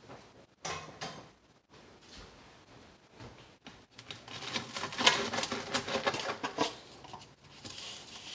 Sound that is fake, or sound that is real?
real